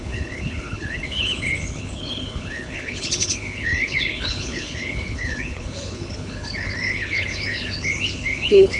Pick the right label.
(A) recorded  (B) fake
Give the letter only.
B